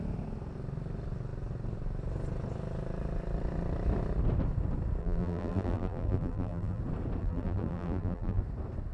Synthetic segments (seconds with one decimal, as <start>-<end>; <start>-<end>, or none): 5.0-6.8; 7.2-8.4